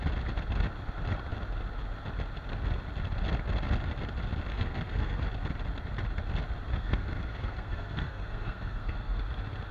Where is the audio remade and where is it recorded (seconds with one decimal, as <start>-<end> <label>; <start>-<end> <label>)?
0.0-4.5 recorded; 4.5-5.3 remade; 5.3-6.7 recorded; 6.7-9.2 remade; 9.2-9.7 recorded